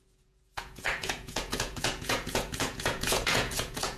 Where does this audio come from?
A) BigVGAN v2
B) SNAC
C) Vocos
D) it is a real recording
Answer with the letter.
C